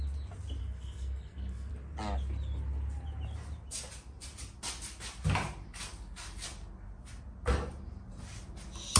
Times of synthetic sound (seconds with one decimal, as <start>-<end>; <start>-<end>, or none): 0.6-1.7

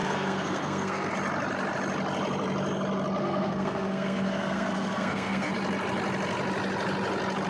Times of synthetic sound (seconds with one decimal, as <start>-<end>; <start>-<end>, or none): 0.0-1.1; 3.2-5.5

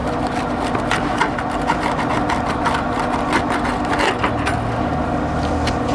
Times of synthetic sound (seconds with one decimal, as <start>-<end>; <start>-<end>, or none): none

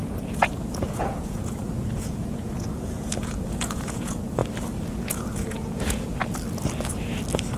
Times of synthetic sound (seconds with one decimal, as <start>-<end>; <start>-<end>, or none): 0.0-4.4; 5.0-6.2

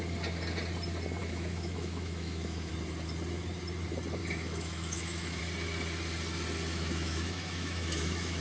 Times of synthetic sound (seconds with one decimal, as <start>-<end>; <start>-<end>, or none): 1.2-2.7; 4.2-5.4; 6.7-8.4

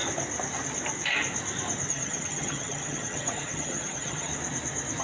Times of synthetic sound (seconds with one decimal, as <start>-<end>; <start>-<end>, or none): 1.9-4.3